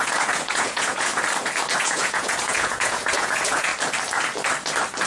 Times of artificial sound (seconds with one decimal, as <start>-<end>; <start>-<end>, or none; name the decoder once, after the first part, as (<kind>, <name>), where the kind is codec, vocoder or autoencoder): 0.0-1.1 (vocoder, Vocos); 1.8-3.7